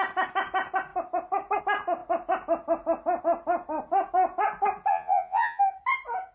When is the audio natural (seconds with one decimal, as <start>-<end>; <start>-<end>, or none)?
0.0-4.9; 5.6-6.3